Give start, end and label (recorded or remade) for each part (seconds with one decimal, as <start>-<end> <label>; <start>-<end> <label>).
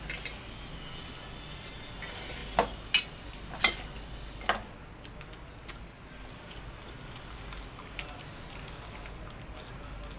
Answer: 0.0-10.2 recorded